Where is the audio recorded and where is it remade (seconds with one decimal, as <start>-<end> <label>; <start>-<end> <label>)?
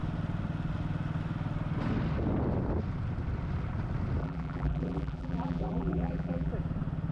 0.0-4.2 recorded; 4.2-6.5 remade; 6.5-7.1 recorded